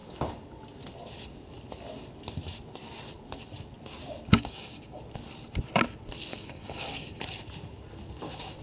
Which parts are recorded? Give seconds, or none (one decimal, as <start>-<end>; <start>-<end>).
0.0-4.3; 5.0-6.3; 7.2-8.6